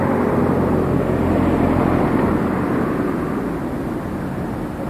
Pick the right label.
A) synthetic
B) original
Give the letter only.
B